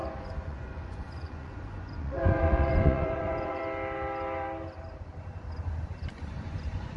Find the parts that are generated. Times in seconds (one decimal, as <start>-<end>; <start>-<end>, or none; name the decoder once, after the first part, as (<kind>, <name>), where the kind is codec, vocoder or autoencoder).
0.0-3.6 (vocoder, Vocos); 6.1-7.0